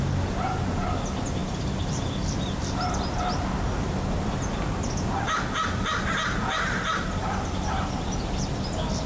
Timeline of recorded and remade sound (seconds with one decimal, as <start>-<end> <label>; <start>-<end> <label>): 0.0-9.1 recorded